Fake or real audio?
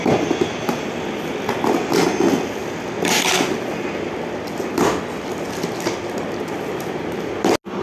real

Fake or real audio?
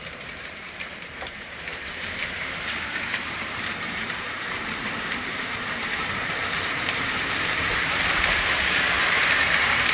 fake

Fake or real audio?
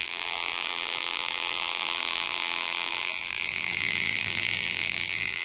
fake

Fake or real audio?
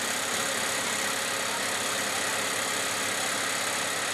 real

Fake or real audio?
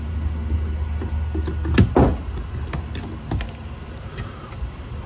real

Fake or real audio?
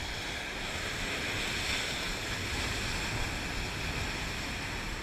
real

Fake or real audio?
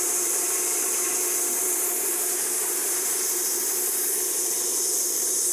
fake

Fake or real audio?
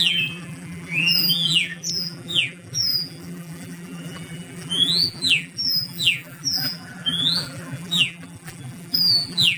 fake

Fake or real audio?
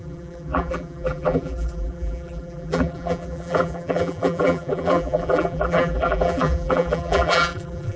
fake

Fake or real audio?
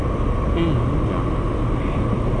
real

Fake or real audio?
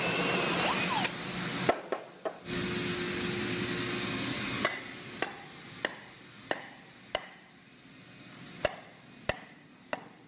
real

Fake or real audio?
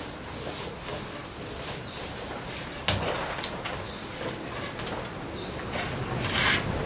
real